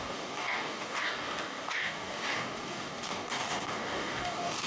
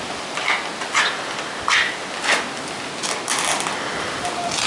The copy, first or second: first